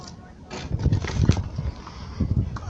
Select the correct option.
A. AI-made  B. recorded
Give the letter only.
B